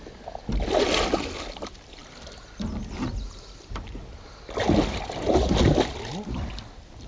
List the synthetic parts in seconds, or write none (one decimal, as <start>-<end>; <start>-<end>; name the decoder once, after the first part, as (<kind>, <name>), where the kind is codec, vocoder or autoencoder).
none